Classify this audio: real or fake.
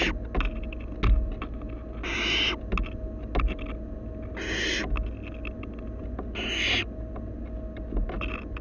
real